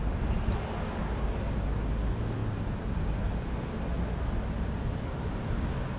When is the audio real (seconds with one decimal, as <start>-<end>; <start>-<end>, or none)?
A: 0.0-6.0